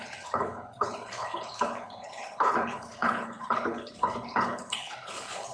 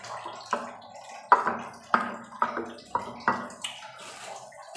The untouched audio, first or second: second